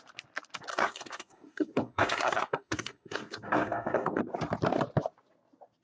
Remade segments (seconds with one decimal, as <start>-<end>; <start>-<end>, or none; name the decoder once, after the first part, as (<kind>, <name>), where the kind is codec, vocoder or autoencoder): 0.7-4.2 (codec, SNAC)

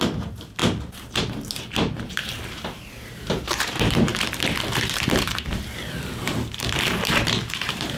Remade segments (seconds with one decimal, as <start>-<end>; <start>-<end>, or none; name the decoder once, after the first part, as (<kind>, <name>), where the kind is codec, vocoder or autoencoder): 0.0-4.1 (vocoder, BigVGAN v2); 4.6-8.0

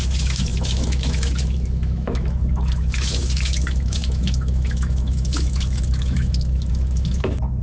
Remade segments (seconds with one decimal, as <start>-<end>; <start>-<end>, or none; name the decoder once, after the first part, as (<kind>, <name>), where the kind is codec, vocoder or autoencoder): 0.0-7.6 (autoencoder, DAC-VAE)

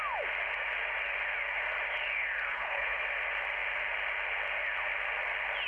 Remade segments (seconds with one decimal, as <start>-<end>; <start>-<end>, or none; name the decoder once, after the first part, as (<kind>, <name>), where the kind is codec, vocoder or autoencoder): 2.5-3.0 (codec, HILCodec)

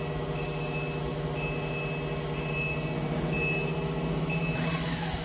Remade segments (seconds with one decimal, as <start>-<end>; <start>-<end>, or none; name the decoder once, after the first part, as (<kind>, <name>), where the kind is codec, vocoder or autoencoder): none

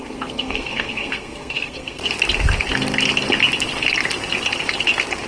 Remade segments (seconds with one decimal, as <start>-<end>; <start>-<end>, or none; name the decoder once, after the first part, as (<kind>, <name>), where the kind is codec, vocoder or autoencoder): 0.0-2.0 (codec, SNAC)

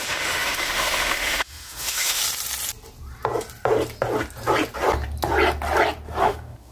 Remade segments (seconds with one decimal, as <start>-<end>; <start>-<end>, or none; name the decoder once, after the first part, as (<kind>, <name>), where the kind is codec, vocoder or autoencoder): 0.0-2.2 (autoencoder, DAC-VAE); 6.2-6.7